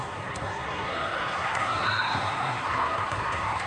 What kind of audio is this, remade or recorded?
remade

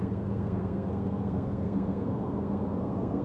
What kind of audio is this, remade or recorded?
remade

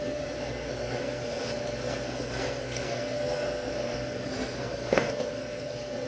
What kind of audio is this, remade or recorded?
remade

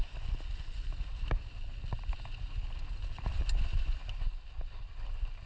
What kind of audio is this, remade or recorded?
recorded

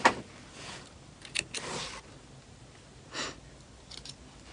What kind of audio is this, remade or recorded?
recorded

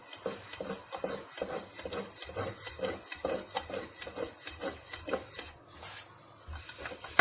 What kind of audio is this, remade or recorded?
recorded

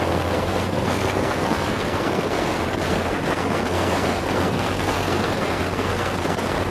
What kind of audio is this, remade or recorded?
remade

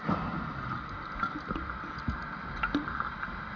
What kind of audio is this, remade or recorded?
recorded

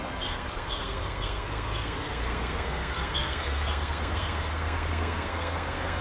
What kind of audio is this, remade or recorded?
remade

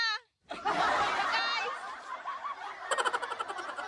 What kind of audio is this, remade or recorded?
recorded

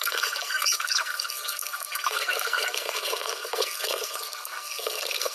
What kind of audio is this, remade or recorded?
remade